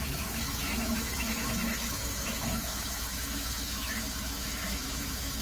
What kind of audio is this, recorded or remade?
remade